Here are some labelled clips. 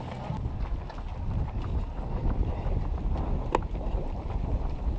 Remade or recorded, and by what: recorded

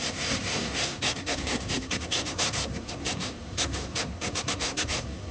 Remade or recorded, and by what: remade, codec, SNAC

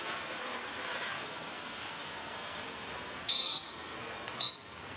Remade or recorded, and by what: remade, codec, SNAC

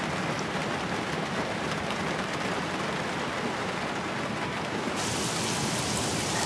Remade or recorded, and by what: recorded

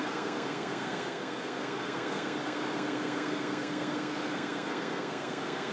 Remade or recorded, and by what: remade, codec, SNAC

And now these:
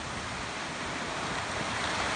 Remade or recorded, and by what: recorded